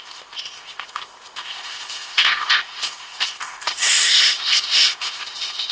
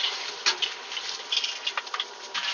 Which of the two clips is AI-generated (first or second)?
first